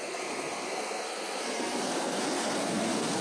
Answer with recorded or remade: remade